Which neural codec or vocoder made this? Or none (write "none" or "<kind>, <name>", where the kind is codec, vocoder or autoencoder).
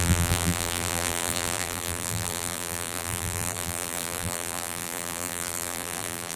vocoder, BigVGAN v2